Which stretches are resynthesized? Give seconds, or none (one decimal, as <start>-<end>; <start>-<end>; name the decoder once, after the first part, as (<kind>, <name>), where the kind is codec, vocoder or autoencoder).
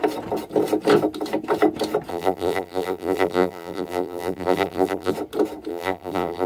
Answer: 2.1-5.1 (vocoder, BigVGAN v2); 5.7-6.5